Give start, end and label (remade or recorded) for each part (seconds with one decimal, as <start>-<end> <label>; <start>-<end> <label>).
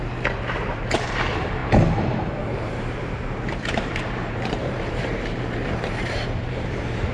0.0-7.1 remade